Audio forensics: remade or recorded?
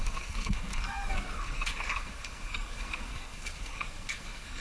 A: remade